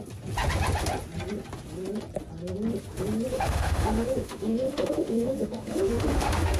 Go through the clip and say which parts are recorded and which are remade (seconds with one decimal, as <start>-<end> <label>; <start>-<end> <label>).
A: 0.0-3.3 recorded; 3.3-6.6 remade